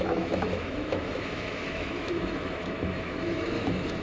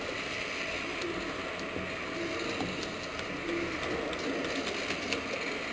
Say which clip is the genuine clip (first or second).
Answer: second